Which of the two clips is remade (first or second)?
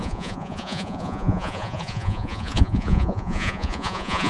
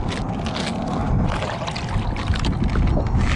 first